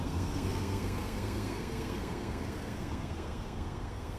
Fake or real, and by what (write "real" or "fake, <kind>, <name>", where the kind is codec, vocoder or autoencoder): fake, codec, SNAC